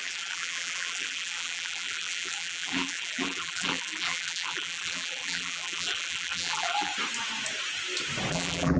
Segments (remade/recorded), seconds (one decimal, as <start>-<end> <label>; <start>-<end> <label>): 0.0-6.9 remade; 6.9-8.3 recorded; 8.3-8.8 remade